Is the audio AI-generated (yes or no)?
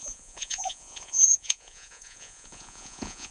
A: yes